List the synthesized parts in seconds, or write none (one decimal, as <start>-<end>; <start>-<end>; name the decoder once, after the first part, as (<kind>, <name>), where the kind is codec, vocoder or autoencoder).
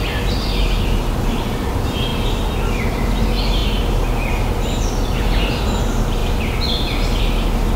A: 3.6-4.3 (vocoder, BigVGAN v2); 6.2-7.2